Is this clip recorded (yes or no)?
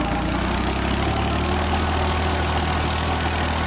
yes